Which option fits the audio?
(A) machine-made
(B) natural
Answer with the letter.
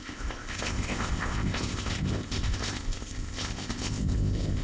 A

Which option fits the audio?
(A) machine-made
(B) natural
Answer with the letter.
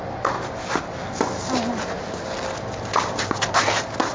B